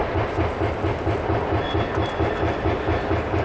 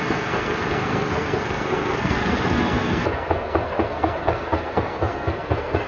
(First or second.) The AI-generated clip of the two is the second